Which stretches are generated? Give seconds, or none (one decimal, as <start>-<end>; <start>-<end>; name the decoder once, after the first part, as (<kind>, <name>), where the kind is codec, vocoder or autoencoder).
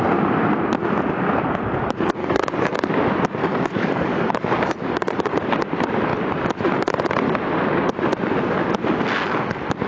2.2-2.9 (codec, DAC); 3.4-5.3